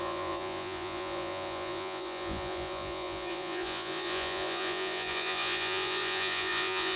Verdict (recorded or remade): remade